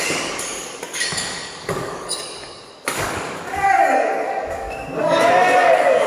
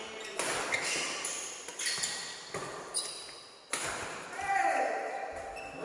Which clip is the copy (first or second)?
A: first